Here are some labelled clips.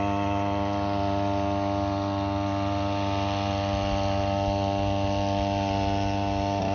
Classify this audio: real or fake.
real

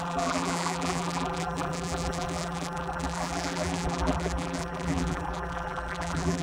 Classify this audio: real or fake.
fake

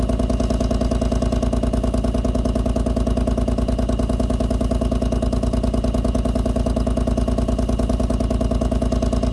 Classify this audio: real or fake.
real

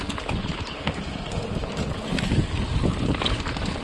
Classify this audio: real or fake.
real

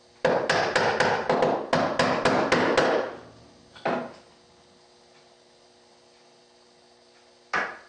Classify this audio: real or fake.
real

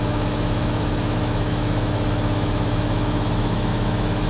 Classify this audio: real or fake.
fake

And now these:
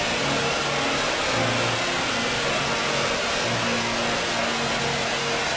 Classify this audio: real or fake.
real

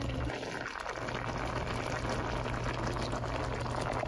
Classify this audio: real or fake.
real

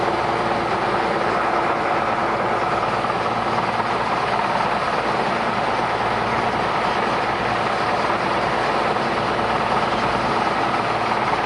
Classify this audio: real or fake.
real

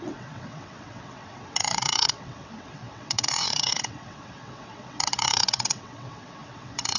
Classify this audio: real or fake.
fake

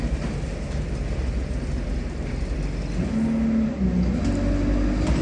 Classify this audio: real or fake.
real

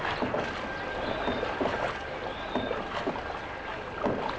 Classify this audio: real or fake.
real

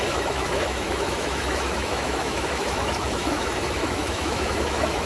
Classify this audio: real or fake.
fake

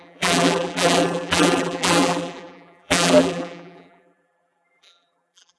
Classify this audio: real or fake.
fake